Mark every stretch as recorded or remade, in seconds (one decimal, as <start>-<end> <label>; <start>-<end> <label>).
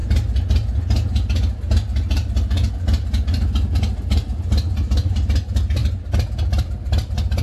0.0-7.4 recorded